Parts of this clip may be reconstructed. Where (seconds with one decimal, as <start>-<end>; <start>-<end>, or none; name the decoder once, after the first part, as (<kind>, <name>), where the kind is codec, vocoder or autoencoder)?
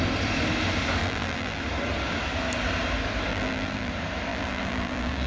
1.0-1.6 (vocoder, BigVGAN v2); 3.3-3.9; 4.3-5.3